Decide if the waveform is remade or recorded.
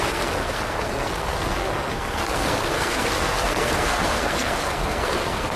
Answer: remade